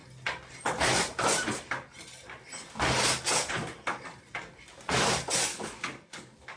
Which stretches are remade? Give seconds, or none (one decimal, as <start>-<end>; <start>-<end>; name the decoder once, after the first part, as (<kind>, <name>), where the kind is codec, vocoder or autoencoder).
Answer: 5.5-6.6 (codec, DAC)